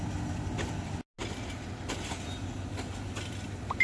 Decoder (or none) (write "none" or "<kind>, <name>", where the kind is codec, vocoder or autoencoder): none